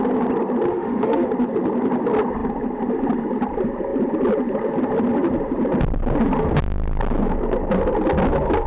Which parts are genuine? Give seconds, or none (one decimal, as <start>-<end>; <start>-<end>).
0.0-0.7; 1.3-8.7